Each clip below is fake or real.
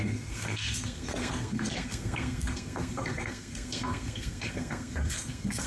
fake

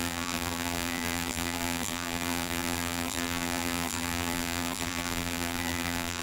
fake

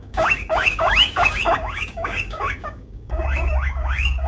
fake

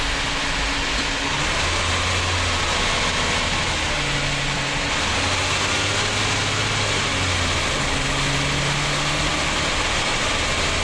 real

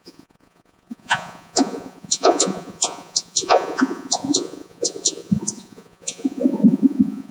fake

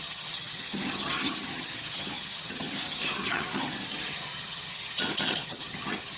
fake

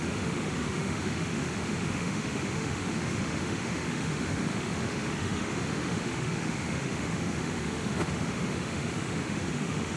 fake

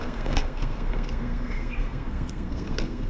fake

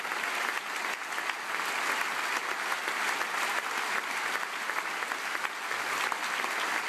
real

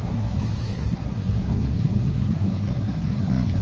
fake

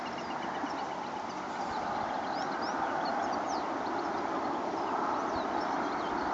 real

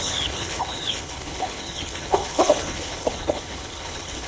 fake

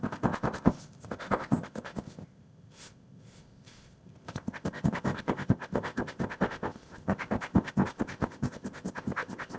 fake